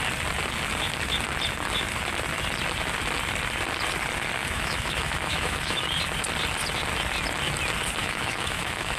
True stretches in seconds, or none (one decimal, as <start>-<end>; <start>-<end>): 0.0-4.4; 5.8-8.0